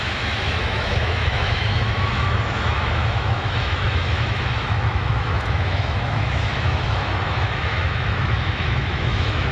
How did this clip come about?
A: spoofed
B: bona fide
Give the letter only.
A